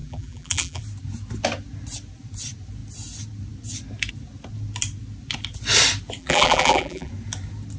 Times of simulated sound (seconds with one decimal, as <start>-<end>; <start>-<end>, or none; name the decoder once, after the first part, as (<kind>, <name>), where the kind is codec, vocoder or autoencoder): 0.0-0.8 (vocoder, BigVGAN v2); 6.2-7.1